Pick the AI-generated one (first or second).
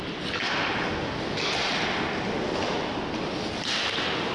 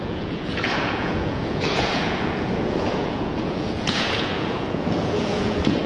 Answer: second